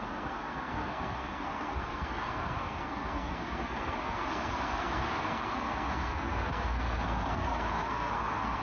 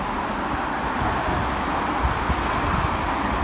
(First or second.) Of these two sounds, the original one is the second